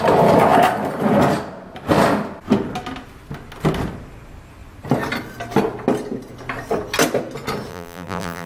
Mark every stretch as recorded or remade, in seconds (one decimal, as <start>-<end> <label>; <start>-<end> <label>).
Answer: 0.0-7.7 recorded; 7.7-8.5 remade